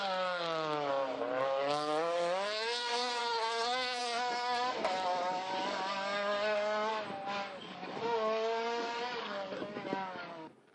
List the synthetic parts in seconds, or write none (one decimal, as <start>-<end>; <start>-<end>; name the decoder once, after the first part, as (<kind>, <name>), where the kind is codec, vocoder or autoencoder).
0.0-0.9 (codec, DAC); 1.4-6.9; 7.6-10.7